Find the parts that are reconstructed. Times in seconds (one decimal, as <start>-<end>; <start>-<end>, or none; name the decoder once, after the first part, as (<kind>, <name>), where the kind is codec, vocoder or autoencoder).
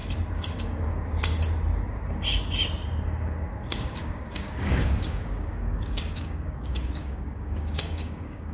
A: 3.7-8.5 (codec, DAC)